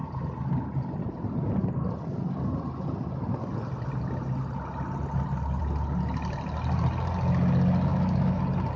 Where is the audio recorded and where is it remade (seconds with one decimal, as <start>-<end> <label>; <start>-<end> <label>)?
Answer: 0.0-7.9 recorded; 7.9-8.4 remade; 8.4-8.8 recorded